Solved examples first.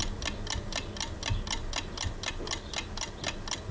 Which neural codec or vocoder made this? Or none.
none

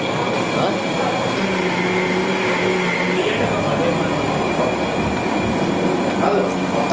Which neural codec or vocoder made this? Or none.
none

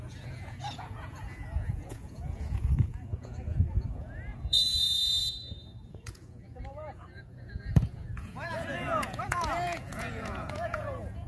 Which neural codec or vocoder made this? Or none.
vocoder, Vocos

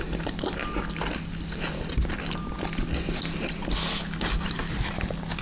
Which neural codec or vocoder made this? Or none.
none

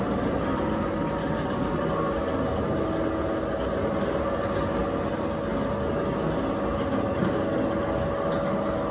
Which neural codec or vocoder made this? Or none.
none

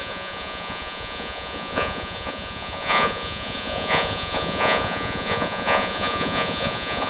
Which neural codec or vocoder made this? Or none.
vocoder, Vocos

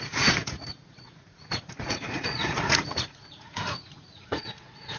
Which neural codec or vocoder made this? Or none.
vocoder, Vocos